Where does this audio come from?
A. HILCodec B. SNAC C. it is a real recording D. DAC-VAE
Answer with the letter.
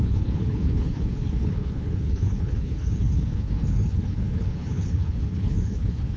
A